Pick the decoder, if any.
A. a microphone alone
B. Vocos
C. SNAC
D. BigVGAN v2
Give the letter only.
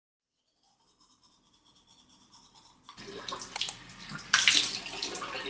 A